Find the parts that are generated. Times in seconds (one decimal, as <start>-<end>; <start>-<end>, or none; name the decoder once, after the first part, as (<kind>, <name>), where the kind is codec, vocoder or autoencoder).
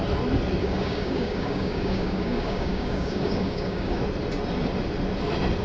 0.6-4.0 (codec, DAC)